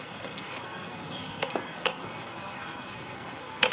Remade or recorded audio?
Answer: remade